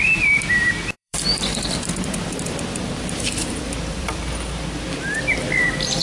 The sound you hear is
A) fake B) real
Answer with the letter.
A